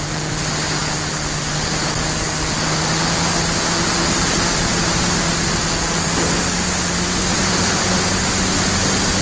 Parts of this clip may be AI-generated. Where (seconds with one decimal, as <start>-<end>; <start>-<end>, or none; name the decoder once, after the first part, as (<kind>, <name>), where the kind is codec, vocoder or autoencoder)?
4.7-5.3 (vocoder, BigVGAN v2); 7.3-8.1